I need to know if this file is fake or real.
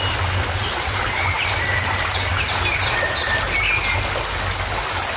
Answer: real